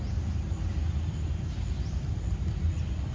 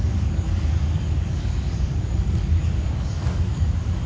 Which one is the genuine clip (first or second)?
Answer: first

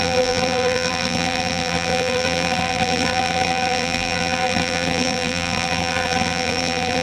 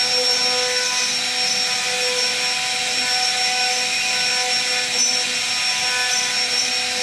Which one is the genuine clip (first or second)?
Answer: second